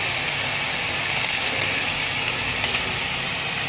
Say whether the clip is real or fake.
real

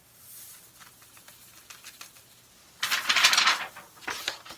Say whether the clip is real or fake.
real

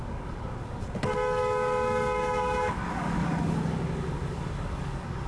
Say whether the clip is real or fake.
fake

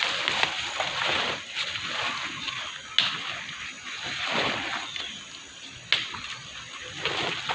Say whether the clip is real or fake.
real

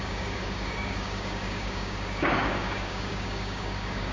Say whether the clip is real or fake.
fake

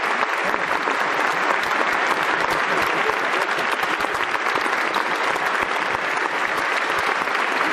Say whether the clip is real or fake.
real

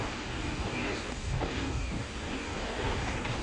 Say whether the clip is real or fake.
fake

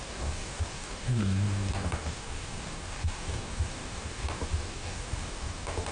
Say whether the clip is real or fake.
fake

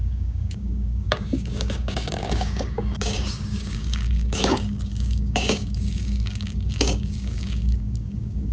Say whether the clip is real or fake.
fake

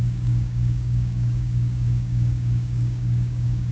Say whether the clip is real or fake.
fake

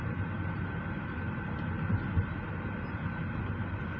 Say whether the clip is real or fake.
real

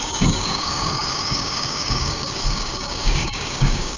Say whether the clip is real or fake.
fake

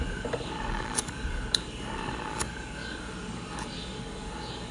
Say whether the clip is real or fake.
fake